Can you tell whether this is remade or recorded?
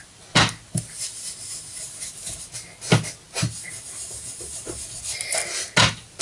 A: recorded